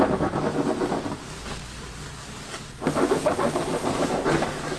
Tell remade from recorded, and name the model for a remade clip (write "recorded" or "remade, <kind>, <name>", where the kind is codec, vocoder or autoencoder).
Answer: recorded